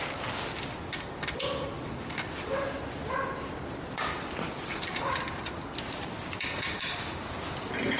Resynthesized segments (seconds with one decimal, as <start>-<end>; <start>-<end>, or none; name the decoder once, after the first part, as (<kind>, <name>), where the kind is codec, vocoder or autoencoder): 3.0-8.0 (vocoder, BigVGAN v2)